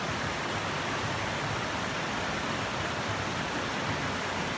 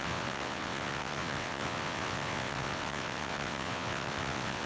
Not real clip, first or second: second